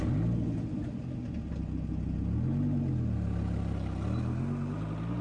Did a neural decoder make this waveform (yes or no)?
no